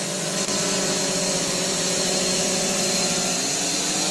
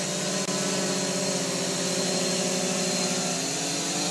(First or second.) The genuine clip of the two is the second